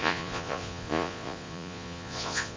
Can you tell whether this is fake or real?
fake